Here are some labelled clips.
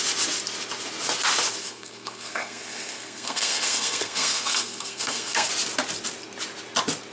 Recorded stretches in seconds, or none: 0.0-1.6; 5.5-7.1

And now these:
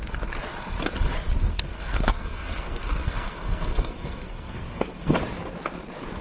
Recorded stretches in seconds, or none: 0.0-1.5; 5.2-6.2

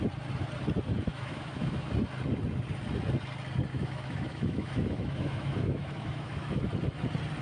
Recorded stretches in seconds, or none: 0.0-1.1; 1.9-3.7; 6.6-7.4